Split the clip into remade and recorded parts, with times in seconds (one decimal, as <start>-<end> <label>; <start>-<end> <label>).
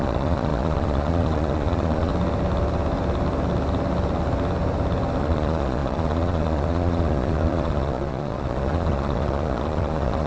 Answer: 0.0-2.1 remade; 2.1-5.2 recorded; 5.2-10.3 remade